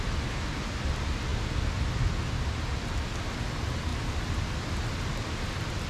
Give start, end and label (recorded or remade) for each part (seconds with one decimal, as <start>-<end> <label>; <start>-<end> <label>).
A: 0.0-3.9 recorded; 3.9-4.5 remade; 4.5-5.9 recorded